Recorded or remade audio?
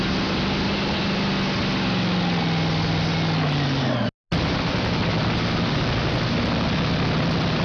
recorded